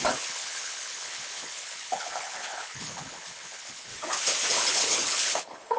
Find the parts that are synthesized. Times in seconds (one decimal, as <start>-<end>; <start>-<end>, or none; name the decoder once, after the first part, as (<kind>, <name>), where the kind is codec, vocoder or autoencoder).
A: 0.0-3.9 (codec, HILCodec); 4.5-5.8